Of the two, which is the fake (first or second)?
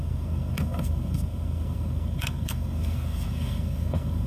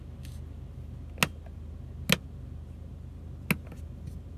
first